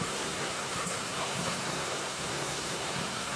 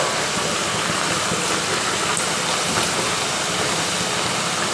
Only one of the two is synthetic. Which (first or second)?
first